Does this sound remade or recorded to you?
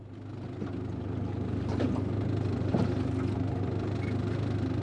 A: recorded